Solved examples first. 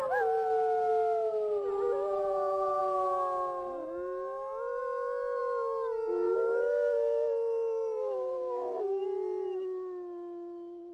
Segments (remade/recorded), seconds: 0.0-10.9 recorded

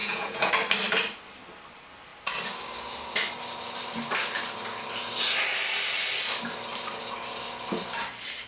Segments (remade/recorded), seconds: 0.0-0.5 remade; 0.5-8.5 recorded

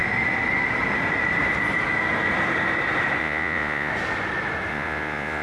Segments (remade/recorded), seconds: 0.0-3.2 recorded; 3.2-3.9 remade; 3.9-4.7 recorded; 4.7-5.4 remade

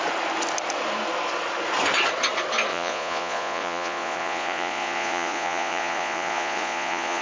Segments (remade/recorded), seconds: 0.0-2.7 recorded; 2.7-7.2 remade

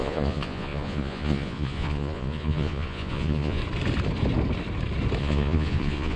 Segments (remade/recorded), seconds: 0.0-3.6 remade; 3.6-5.2 recorded; 5.2-6.2 remade

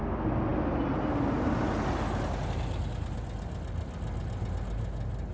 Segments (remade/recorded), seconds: 0.0-5.3 recorded

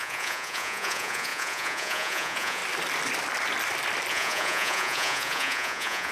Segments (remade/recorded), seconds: 0.0-2.6 remade; 2.6-4.1 recorded; 4.1-6.1 remade

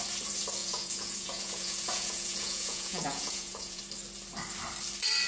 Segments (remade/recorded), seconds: 0.0-0.6 recorded; 0.6-3.8 remade; 3.8-5.3 recorded